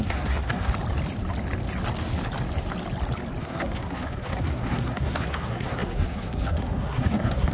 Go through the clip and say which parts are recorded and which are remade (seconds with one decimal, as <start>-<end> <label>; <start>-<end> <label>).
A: 0.0-0.7 remade; 0.7-3.4 recorded; 3.4-7.5 remade